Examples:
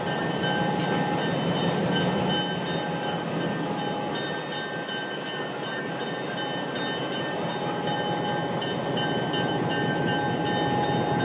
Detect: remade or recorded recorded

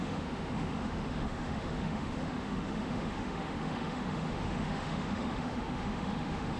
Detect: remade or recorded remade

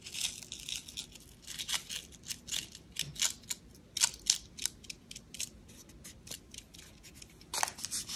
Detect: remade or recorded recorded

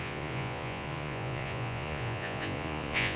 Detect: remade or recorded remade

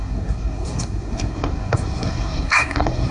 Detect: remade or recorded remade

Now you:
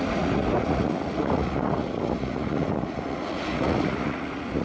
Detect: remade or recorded remade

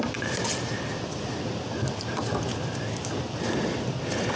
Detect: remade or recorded recorded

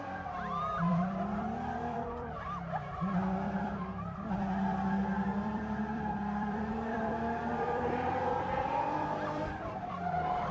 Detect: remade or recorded remade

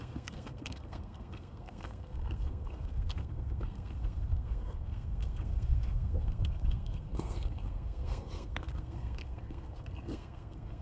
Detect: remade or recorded remade